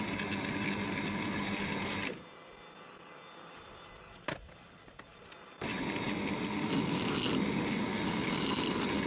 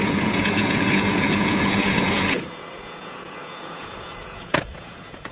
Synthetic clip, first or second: second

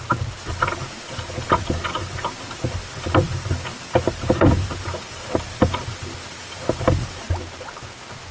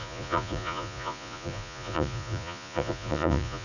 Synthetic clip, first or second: second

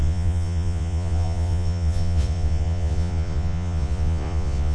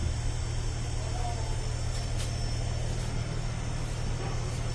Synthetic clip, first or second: first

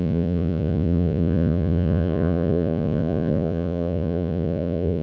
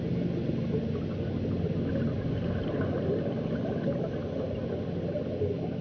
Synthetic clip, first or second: first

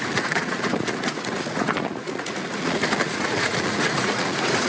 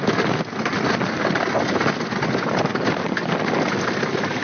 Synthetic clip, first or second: first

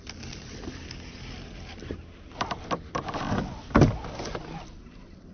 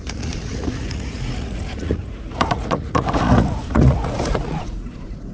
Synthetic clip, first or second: second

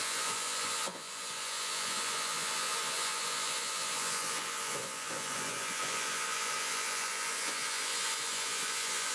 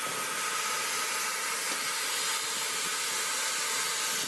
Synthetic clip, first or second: first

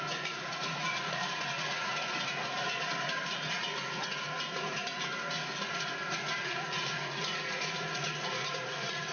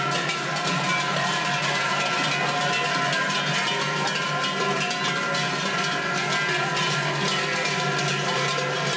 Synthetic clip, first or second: first